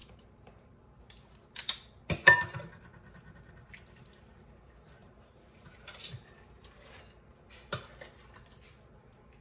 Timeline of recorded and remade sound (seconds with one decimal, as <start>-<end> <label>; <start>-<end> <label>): 0.0-1.0 remade; 1.0-5.0 recorded; 5.0-7.4 remade; 7.4-9.4 recorded